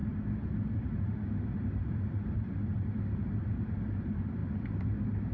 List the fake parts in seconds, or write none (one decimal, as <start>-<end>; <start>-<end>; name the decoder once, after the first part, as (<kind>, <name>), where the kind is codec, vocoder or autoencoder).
none